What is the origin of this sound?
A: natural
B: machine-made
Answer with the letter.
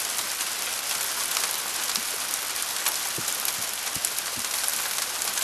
A